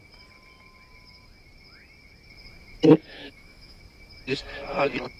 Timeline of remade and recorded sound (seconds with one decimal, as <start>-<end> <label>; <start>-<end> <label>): 0.0-3.1 recorded; 3.1-3.8 remade; 3.8-5.2 recorded